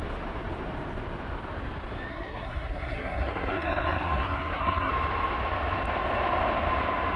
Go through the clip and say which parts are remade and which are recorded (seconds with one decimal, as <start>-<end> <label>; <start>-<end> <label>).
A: 0.0-2.1 recorded; 2.1-4.9 remade; 4.9-7.2 recorded